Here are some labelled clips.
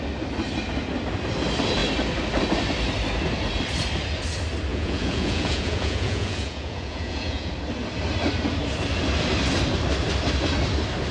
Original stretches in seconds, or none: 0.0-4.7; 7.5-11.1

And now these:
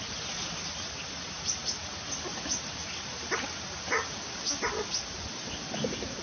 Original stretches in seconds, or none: 0.0-6.2

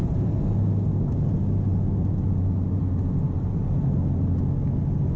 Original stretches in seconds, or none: 0.0-5.2